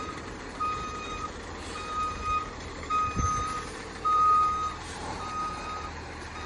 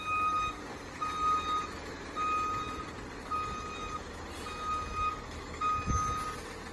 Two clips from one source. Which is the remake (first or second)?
first